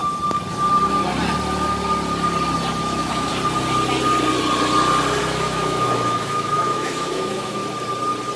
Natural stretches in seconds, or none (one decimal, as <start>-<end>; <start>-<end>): 0.0-2.8; 3.3-5.2; 7.6-8.4